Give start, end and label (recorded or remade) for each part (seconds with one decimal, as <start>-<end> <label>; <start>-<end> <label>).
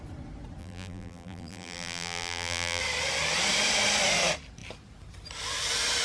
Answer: 0.0-0.6 recorded; 0.6-2.8 remade; 2.8-6.0 recorded